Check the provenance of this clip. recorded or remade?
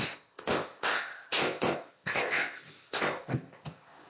remade